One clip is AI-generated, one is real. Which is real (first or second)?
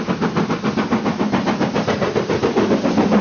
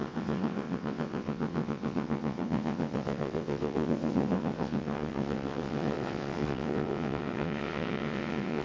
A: first